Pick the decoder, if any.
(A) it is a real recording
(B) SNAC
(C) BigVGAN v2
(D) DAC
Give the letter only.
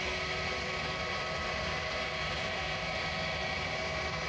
C